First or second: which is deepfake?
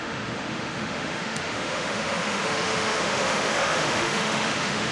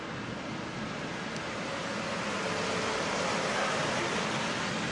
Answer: first